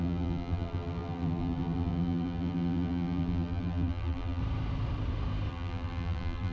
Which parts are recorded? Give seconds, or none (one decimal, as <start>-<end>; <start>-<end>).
4.4-5.5